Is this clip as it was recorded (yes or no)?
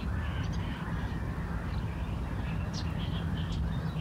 yes